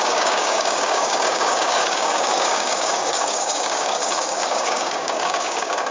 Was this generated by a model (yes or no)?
yes